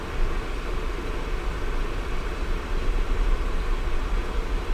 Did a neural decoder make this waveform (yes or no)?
no